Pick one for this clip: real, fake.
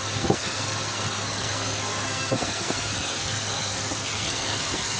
fake